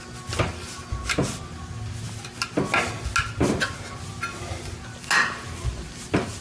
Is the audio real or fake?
real